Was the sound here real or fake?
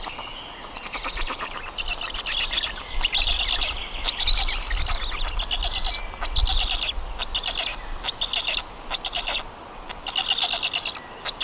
real